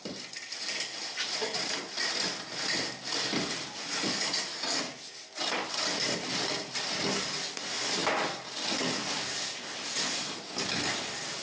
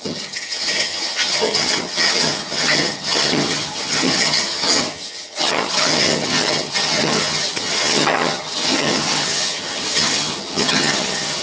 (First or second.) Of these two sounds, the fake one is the second